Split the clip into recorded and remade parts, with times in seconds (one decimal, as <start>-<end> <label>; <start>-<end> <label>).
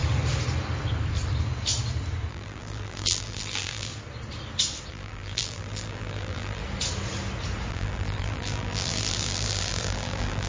0.0-2.3 recorded; 2.3-3.9 remade; 3.9-4.9 recorded; 4.9-6.6 remade; 6.6-7.7 recorded; 7.7-10.5 remade